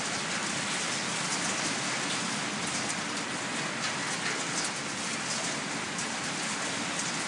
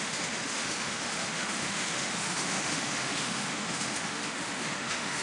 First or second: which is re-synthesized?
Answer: second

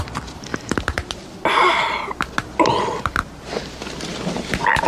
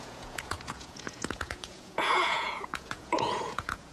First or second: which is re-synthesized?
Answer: second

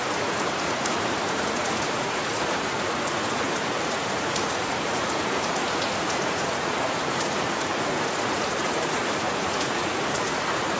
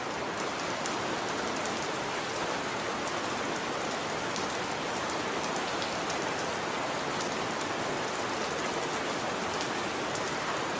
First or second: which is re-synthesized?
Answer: first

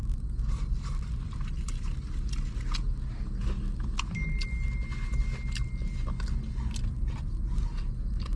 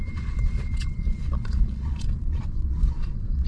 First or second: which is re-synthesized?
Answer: second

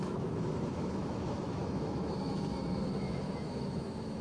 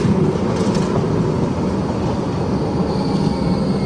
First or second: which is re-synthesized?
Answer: first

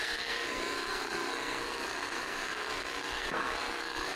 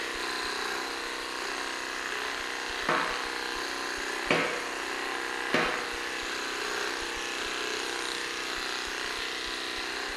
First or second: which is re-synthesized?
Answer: first